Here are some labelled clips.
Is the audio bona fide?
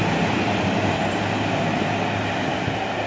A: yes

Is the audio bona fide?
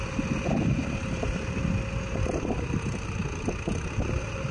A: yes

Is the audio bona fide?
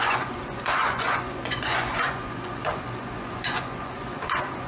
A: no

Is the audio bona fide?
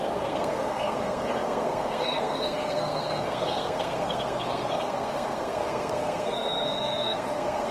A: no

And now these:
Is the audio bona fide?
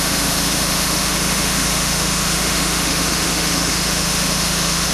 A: no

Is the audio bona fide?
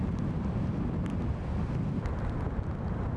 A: yes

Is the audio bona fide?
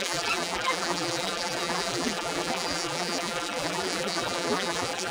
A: no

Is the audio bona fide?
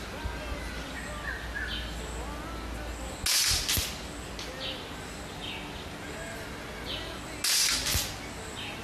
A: yes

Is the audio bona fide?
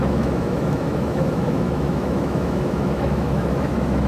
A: no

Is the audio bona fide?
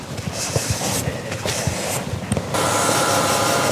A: yes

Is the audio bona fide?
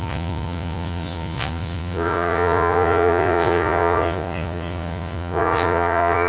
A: no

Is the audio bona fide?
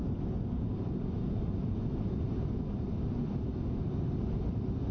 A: yes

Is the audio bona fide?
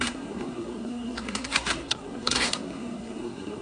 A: no